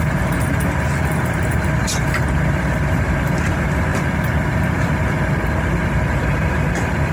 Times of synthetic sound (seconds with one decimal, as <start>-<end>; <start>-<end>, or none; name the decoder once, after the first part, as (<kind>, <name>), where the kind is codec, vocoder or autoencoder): 0.0-3.9 (vocoder, BigVGAN v2); 5.5-7.1

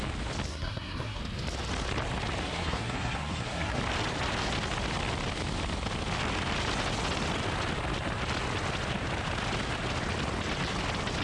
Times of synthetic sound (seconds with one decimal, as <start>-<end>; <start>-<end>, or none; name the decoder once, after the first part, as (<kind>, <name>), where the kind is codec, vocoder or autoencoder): 0.5-1.2 (codec, SNAC); 2.4-3.8

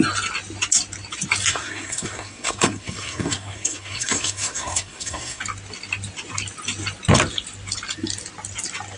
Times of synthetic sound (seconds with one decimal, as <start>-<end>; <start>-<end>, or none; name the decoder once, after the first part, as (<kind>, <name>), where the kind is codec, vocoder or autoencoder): 1.5-5.4 (codec, SNAC)

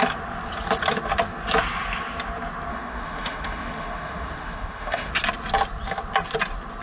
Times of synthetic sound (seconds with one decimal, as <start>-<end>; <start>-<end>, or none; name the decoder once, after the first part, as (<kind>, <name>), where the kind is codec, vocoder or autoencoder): 2.7-5.1 (autoencoder, DAC-VAE)

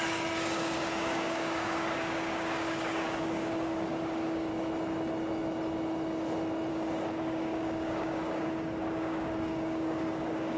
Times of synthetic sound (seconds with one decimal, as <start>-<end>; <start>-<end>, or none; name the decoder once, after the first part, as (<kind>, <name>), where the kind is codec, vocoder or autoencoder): 0.0-4.5 (codec, DAC); 6.7-10.6

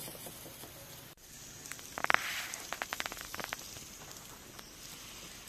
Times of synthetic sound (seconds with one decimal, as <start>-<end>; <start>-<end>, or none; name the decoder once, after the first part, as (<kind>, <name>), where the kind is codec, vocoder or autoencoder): 2.9-3.7 (vocoder, BigVGAN v2)

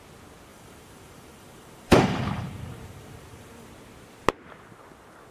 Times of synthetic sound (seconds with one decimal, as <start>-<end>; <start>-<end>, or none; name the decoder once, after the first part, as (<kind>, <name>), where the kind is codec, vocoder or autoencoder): 0.5-3.7 (vocoder, BigVGAN v2)